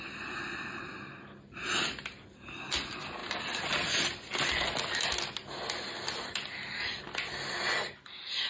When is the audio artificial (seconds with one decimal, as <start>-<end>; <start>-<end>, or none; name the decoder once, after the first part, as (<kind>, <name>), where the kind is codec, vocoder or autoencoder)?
none

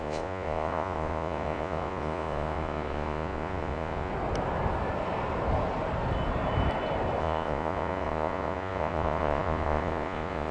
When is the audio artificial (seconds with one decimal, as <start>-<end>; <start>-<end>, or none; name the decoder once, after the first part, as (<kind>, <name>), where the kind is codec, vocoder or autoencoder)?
0.0-4.1 (vocoder, Vocos); 7.2-10.5

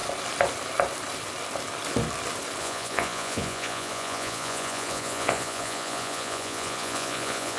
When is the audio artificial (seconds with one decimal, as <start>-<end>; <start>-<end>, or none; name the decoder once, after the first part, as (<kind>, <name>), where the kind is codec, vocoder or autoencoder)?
2.6-7.6 (vocoder, Vocos)

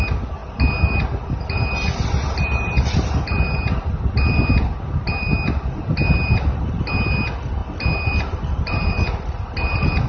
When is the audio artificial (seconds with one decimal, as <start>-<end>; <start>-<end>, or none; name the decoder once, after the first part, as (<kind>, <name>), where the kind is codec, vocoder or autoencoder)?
none